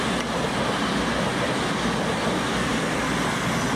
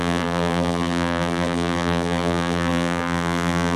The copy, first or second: second